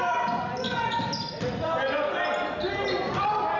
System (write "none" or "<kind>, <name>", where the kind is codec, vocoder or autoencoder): none